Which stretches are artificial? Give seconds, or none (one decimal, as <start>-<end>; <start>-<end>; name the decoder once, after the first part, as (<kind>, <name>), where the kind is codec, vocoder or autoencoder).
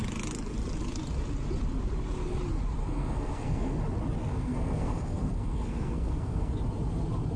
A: 2.8-3.8 (codec, SNAC); 4.3-6.5